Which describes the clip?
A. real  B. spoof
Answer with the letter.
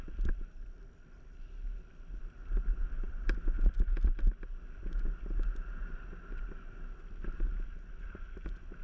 A